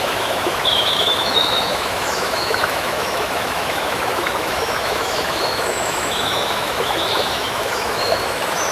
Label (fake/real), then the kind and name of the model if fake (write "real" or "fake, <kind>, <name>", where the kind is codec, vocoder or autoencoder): fake, autoencoder, DAC-VAE